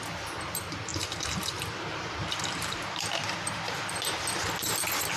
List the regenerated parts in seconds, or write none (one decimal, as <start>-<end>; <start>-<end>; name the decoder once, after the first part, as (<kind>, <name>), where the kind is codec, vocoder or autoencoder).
0.9-4.0 (vocoder, BigVGAN v2)